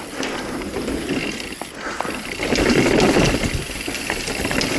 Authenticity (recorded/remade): recorded